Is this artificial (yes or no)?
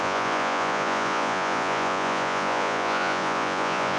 yes